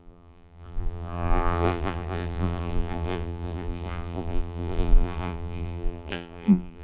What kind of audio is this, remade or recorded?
remade